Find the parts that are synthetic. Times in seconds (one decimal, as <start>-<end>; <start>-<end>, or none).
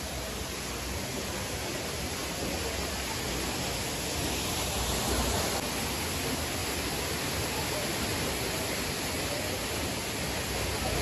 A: none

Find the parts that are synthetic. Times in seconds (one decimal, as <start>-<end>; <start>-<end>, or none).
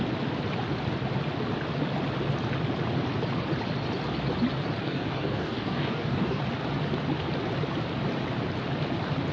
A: 4.8-6.4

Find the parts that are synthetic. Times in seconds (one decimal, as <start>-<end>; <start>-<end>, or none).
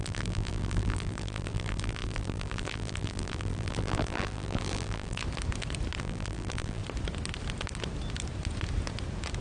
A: 0.0-5.2; 6.0-6.8